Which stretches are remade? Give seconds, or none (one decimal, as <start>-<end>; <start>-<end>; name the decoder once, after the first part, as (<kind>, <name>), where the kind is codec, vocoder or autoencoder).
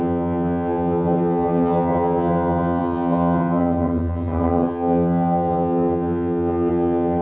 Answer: 0.0-7.2 (vocoder, HiFi-GAN)